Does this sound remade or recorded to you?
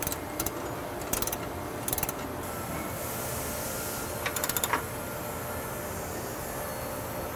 recorded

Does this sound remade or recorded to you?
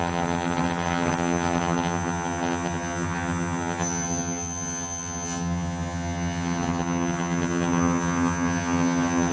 remade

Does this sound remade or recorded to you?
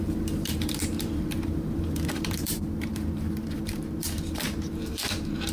remade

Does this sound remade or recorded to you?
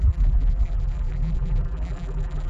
remade